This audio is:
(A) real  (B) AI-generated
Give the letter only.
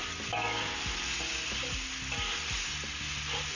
A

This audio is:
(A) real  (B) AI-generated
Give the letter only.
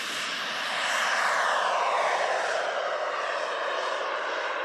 A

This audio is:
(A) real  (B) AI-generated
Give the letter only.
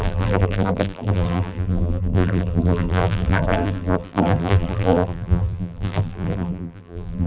B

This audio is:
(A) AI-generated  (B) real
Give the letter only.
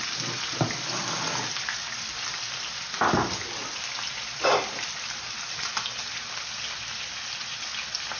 B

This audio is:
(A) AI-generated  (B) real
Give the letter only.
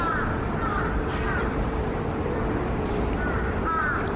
A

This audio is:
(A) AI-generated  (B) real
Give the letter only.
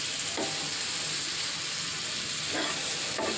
B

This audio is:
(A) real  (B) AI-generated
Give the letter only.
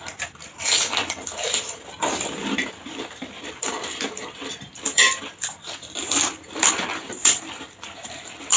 B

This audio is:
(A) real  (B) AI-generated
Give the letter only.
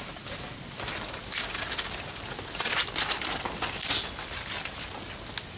A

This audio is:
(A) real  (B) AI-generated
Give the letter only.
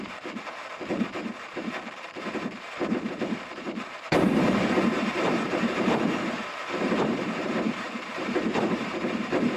B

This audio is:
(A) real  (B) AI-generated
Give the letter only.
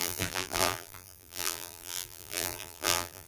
B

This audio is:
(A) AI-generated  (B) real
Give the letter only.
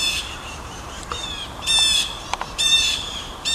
A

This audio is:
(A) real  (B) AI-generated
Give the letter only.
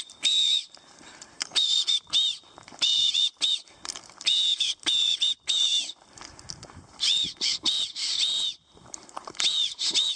B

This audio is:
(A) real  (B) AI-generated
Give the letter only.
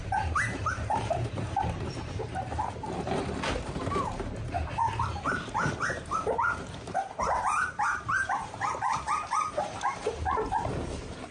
B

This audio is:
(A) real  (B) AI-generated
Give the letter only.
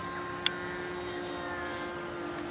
A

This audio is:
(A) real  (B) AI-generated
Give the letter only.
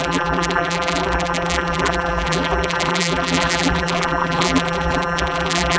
B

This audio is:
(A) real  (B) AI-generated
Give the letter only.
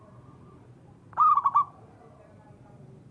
B